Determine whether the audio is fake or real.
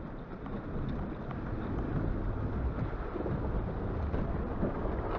real